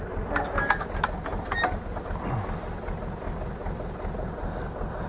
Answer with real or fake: real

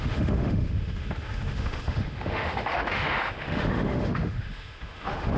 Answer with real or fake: fake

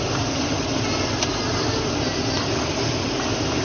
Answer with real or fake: real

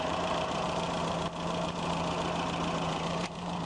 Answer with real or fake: fake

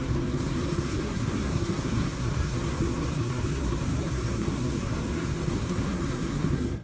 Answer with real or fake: fake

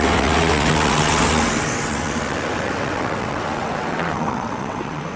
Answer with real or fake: fake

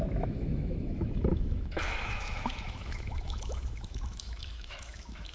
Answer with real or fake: fake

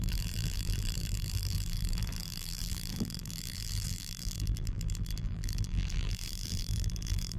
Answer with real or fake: fake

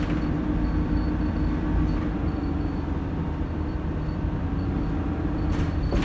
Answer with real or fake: real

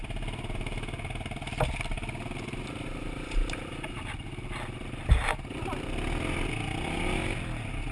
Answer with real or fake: real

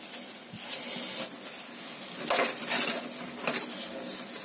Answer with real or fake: real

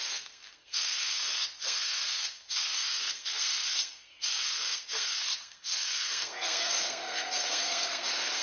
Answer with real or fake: fake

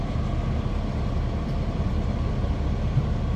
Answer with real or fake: real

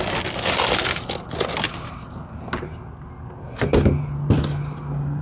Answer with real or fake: real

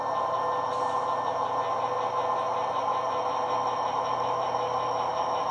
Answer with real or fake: real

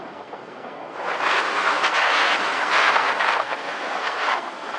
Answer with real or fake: fake